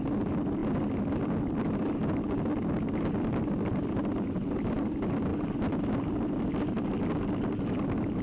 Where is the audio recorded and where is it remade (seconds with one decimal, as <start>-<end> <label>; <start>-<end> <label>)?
0.0-8.2 recorded